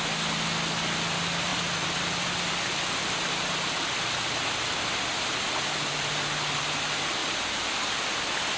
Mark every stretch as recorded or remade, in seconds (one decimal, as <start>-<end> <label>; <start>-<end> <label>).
0.0-8.6 recorded